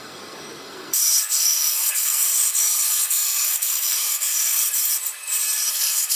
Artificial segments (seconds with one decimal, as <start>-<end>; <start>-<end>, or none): 0.0-4.6; 5.7-6.2